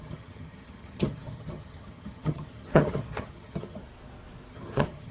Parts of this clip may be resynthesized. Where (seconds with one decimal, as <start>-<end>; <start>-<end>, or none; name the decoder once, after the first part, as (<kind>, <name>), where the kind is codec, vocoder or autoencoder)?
0.0-3.8 (vocoder, HiFi-GAN); 4.5-5.1